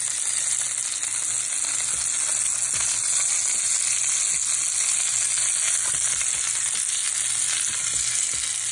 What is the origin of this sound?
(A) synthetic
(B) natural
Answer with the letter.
B